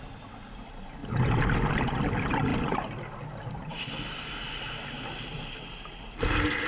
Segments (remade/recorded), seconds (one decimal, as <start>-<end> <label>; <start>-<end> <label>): 0.0-6.7 recorded